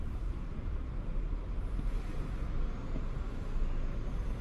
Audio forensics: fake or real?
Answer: real